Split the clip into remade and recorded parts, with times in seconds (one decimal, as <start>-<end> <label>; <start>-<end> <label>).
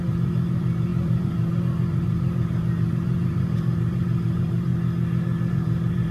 0.0-4.7 remade; 4.7-5.5 recorded; 5.5-6.1 remade